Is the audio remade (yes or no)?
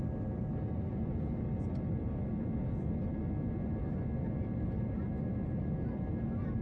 no